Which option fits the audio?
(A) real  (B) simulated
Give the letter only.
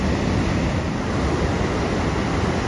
A